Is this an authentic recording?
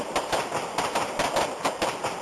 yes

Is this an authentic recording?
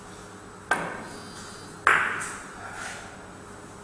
yes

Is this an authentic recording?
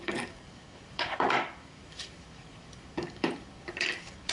no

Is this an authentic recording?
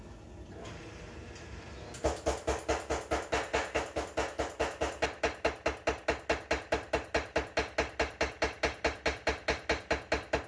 yes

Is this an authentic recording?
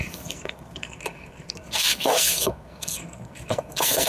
no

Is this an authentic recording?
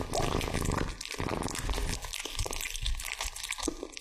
yes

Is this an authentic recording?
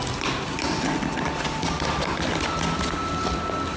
yes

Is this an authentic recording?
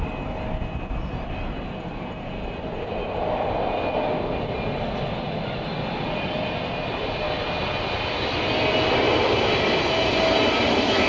yes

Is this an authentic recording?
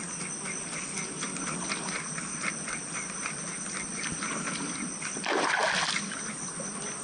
yes